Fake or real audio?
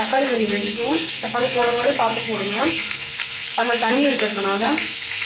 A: fake